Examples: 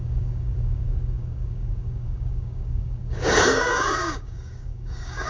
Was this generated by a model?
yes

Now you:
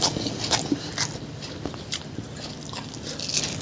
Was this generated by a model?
no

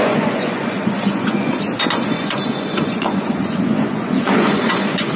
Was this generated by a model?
yes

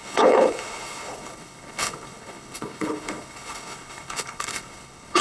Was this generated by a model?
yes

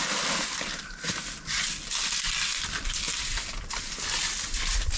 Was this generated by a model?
no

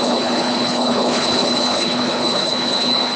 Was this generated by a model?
yes